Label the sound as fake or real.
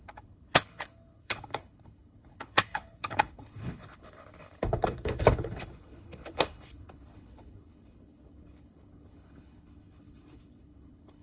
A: fake